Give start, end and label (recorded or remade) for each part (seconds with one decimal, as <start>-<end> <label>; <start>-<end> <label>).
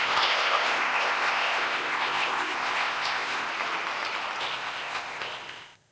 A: 0.0-3.5 remade; 3.5-4.4 recorded; 4.4-5.9 remade